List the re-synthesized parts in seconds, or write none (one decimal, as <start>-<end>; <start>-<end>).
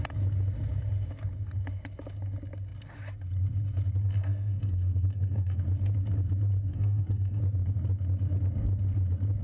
4.0-5.6; 6.7-7.4